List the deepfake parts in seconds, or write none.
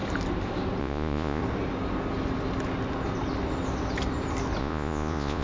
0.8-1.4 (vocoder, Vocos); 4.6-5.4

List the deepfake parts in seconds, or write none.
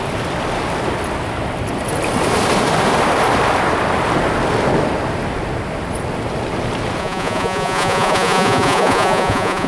7.0-9.7 (vocoder, Vocos)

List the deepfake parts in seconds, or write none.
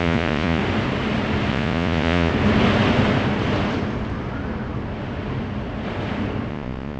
0.0-0.6 (vocoder, Vocos); 1.5-2.3; 6.5-7.0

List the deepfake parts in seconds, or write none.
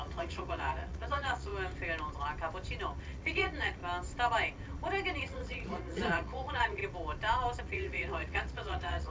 0.0-1.5 (vocoder, Vocos); 3.0-3.8; 5.2-6.8; 7.6-9.1